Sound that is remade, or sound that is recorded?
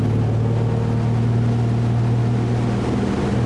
recorded